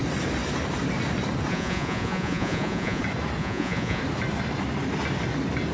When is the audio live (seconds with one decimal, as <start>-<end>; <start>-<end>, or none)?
0.0-1.5; 3.0-3.4; 4.0-5.7